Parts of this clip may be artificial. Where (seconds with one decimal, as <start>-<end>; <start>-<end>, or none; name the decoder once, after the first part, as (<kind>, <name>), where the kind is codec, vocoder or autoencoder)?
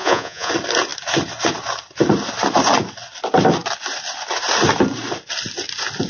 0.0-0.5 (vocoder, Vocos)